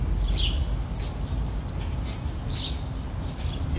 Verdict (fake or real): real